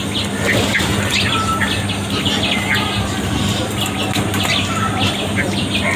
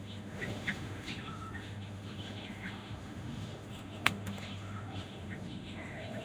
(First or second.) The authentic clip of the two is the first